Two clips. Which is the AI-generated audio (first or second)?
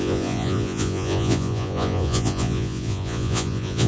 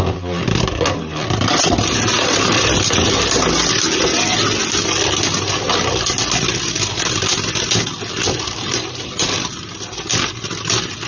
first